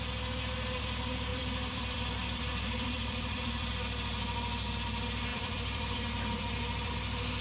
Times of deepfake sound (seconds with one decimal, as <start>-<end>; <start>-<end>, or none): 1.3-3.7; 5.3-6.9

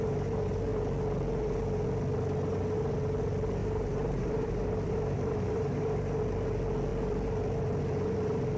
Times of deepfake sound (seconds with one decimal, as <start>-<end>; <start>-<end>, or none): 3.6-6.2